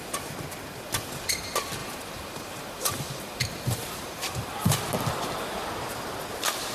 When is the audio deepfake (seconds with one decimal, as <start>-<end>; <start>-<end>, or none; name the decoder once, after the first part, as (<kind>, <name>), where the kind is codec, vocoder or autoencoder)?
1.8-4.8 (vocoder, BigVGAN v2)